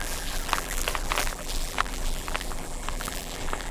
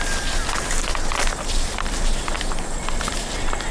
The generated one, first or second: first